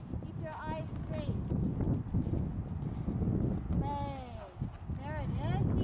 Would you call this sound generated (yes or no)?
no